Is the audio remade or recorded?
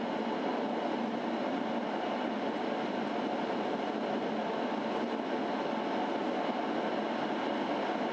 recorded